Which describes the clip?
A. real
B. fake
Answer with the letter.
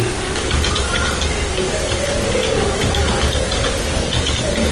B